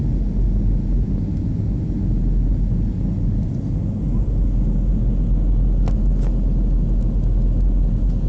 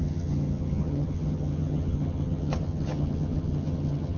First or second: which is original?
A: first